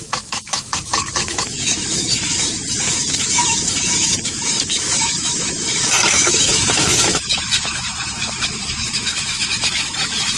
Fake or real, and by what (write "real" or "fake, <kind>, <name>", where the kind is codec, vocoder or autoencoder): fake, autoencoder, DAC-VAE